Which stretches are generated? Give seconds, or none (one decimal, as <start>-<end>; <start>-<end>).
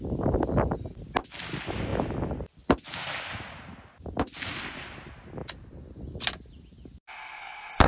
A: none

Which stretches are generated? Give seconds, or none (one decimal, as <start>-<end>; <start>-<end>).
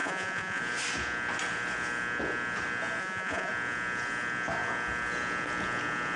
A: 0.0-0.6; 3.0-3.5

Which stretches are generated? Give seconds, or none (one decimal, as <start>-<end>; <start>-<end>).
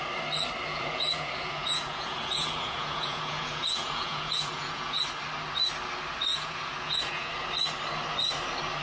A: 0.7-5.0; 6.3-7.3